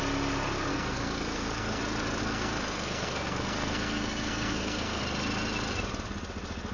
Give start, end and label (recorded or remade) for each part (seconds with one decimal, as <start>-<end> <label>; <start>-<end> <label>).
0.0-0.7 recorded; 0.7-1.8 remade; 1.8-2.2 recorded; 2.2-5.0 remade; 5.0-6.7 recorded